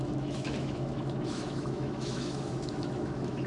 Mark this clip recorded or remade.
remade